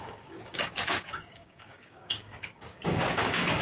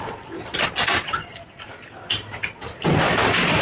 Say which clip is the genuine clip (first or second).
second